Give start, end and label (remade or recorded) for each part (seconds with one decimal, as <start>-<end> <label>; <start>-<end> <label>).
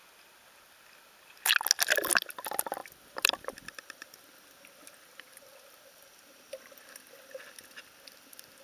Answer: 0.0-2.8 recorded; 2.8-7.4 remade; 7.4-8.6 recorded